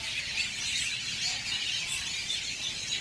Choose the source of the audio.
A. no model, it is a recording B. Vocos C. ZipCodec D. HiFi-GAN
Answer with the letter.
B